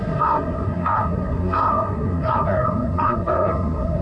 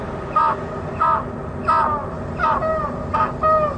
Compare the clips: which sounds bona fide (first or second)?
second